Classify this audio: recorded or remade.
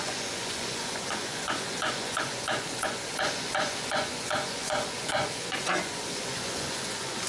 remade